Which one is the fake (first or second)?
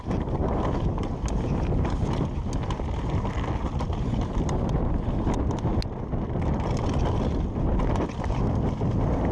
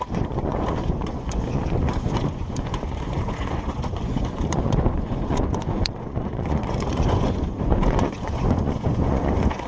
second